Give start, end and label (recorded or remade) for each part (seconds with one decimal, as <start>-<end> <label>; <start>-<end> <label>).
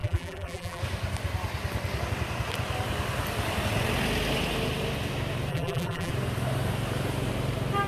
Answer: 0.0-0.8 remade; 0.8-5.5 recorded; 5.5-6.1 remade; 6.1-7.9 recorded